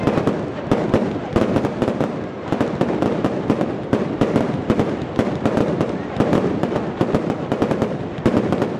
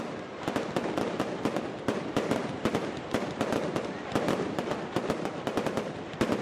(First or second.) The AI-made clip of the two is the second